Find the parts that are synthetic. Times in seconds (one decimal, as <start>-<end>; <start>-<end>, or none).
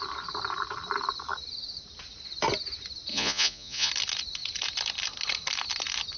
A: 3.1-3.9